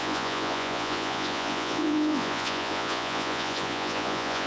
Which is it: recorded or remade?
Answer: remade